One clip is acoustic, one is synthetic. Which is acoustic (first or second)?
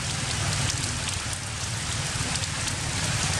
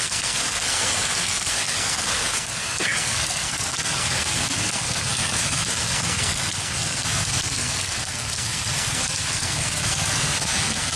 first